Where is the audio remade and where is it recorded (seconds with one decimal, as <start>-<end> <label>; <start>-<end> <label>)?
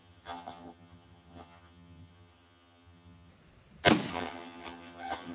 0.0-3.3 remade; 3.3-4.1 recorded; 4.1-5.3 remade